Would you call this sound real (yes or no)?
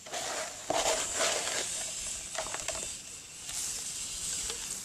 yes